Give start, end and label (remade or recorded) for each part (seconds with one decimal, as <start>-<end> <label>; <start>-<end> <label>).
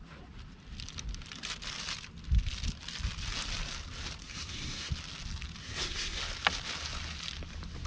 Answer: 0.0-4.2 recorded; 4.2-4.9 remade; 4.9-5.6 recorded; 5.6-6.2 remade; 6.2-7.9 recorded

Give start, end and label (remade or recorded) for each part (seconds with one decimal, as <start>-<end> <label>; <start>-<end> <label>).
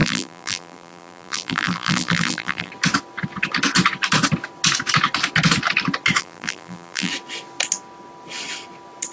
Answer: 0.0-2.7 remade; 2.7-6.2 recorded; 6.2-7.1 remade; 7.1-9.1 recorded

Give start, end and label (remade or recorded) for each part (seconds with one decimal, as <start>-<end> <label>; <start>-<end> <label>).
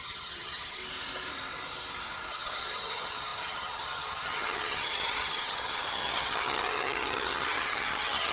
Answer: 0.0-0.8 remade; 0.8-2.3 recorded; 2.3-8.3 remade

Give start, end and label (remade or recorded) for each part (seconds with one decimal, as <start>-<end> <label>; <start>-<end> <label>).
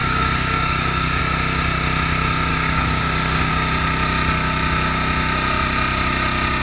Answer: 0.0-1.2 remade; 1.2-2.5 recorded; 2.5-3.5 remade; 3.5-6.6 recorded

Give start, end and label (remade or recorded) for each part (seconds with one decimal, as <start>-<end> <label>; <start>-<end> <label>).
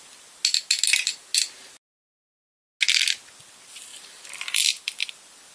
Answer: 0.0-3.9 recorded; 3.9-5.5 remade